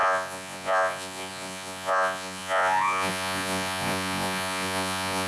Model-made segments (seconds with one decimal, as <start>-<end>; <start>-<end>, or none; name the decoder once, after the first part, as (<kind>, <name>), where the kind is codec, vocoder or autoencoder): 0.0-5.3 (vocoder, Vocos)